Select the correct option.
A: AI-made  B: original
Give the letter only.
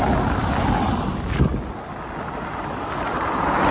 B